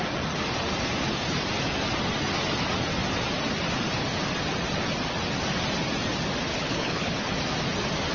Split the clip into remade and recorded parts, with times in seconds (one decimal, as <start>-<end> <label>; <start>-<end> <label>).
0.0-6.5 recorded; 6.5-7.3 remade; 7.3-8.1 recorded

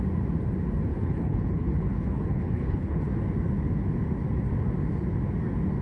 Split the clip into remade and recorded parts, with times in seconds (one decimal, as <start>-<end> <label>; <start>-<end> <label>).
0.0-0.9 recorded; 0.9-3.0 remade; 3.0-5.8 recorded

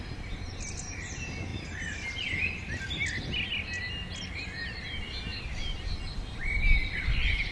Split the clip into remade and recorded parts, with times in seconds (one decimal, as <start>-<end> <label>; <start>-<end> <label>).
0.0-7.5 recorded

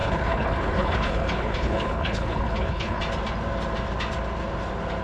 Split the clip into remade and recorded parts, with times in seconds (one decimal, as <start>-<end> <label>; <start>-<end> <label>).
0.0-3.0 remade; 3.0-5.0 recorded